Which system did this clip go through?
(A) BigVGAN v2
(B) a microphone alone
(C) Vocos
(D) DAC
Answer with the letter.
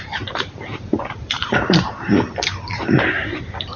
A